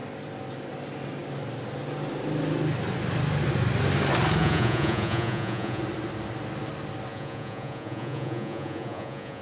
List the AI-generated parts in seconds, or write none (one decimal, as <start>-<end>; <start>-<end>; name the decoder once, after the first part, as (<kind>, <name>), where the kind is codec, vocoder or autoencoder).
4.4-5.8 (vocoder, Vocos); 7.1-9.4